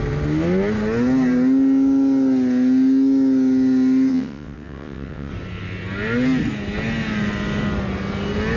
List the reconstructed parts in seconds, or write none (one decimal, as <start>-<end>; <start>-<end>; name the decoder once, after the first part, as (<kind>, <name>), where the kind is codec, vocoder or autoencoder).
4.1-5.3 (vocoder, WaveNeXt)